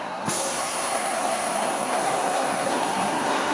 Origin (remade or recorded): remade